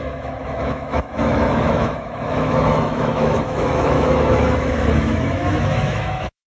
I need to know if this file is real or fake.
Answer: fake